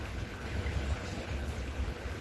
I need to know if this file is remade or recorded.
remade